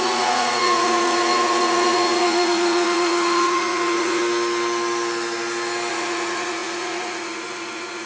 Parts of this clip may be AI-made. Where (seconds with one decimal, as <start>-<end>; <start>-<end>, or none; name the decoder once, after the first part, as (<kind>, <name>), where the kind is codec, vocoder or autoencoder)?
0.0-4.2 (vocoder, Vocos); 5.9-8.1